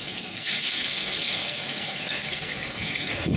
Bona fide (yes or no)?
no